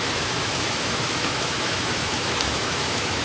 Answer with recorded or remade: remade